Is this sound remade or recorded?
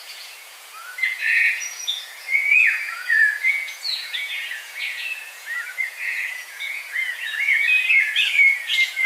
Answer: remade